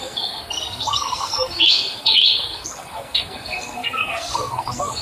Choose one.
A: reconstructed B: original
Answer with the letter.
A